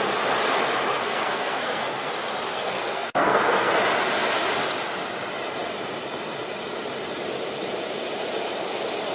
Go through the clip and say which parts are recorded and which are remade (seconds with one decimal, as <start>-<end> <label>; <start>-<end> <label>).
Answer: 0.0-0.9 recorded; 0.9-2.1 remade; 2.1-2.5 recorded; 2.5-3.7 remade; 3.7-9.1 recorded